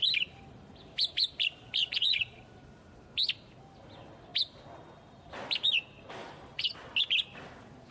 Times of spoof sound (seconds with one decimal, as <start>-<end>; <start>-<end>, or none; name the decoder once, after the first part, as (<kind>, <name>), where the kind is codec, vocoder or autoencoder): 1.8-2.4 (vocoder, Vocos); 6.2-6.7

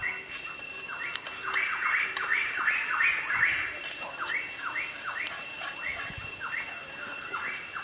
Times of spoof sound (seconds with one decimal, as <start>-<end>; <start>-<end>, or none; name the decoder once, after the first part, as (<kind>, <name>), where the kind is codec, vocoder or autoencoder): none

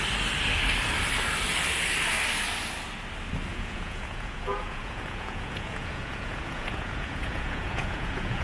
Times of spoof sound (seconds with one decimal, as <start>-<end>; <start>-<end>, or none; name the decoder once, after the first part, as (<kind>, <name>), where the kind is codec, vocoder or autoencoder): 3.5-8.4 (vocoder, Vocos)

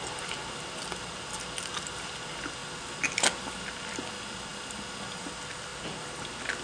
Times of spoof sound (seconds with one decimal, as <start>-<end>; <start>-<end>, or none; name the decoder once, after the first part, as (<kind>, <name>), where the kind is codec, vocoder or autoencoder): none

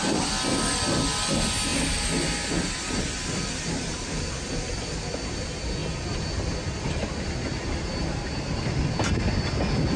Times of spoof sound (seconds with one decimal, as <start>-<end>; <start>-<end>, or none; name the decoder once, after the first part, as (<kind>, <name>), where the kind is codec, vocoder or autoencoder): none

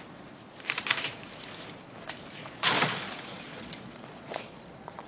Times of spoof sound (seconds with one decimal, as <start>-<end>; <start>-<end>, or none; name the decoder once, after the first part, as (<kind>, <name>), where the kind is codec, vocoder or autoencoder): 2.4-5.1 (vocoder, Vocos)

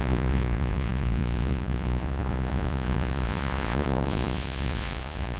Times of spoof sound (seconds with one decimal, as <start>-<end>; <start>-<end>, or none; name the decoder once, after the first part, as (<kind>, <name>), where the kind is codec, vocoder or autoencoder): 0.0-5.4 (vocoder, Vocos)